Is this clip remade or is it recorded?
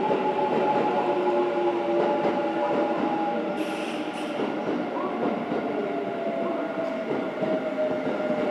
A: remade